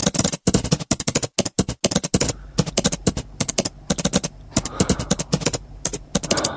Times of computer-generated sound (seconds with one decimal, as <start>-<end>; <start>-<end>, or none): none